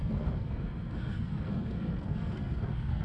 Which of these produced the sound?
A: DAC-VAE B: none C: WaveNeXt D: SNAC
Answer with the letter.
D